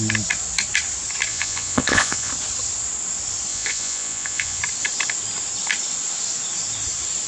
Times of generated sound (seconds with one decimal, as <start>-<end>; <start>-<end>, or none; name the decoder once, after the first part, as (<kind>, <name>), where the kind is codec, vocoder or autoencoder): 1.3-2.3 (vocoder, Vocos); 3.5-4.6